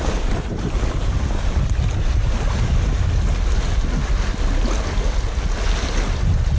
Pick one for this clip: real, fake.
real